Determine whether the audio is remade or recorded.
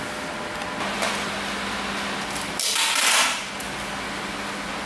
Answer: recorded